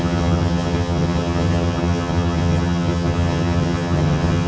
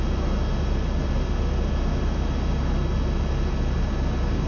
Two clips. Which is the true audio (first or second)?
second